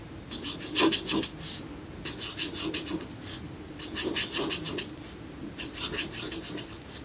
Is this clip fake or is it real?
real